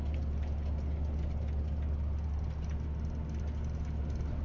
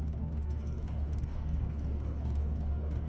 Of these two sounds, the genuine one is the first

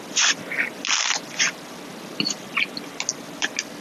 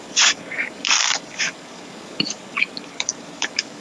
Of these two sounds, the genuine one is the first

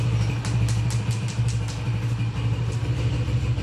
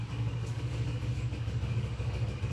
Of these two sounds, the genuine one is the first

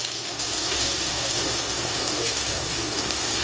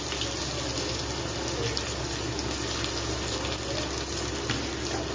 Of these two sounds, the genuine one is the second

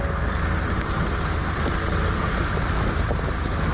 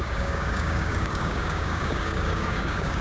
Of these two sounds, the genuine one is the first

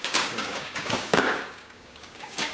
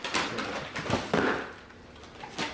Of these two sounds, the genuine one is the second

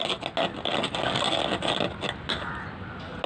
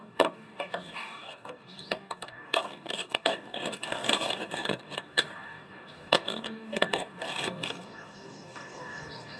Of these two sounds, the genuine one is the first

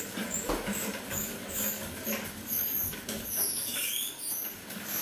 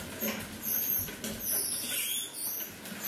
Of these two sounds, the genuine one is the second